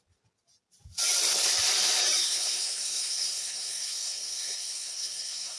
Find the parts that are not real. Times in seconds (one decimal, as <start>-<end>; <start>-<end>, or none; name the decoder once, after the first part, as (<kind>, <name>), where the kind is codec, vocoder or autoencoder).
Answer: 2.2-5.6 (codec, SNAC)